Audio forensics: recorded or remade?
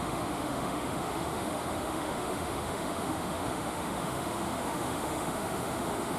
remade